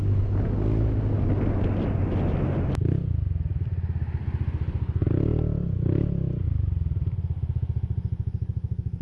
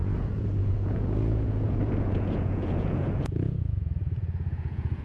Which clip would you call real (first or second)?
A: first